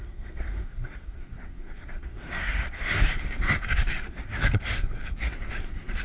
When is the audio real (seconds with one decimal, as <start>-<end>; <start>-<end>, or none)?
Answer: none